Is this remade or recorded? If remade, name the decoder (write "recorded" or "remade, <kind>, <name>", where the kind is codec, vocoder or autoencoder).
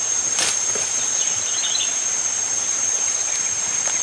remade, vocoder, BigVGAN v2